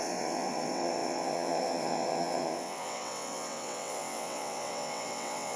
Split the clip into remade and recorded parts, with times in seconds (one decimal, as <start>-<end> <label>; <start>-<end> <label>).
0.0-5.6 remade